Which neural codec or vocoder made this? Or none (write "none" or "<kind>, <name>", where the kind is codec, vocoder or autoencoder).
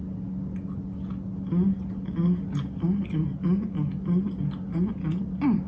none